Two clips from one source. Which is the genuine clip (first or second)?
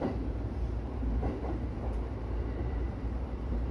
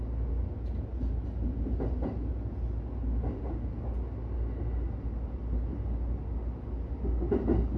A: second